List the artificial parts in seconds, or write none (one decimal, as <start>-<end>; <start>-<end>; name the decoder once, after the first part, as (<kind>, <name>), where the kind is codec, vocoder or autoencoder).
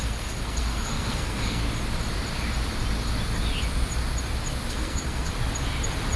0.0-1.6 (codec, SNAC); 4.7-5.3